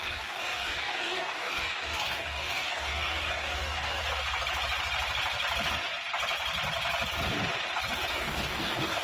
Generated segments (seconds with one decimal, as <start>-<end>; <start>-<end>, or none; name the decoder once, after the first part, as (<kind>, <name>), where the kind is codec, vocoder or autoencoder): 0.0-4.0 (codec, DAC); 8.1-9.0